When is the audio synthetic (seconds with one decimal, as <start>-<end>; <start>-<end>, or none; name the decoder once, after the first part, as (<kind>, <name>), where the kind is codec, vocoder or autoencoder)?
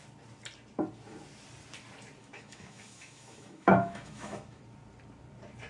2.2-4.6 (autoencoder, DAC-VAE)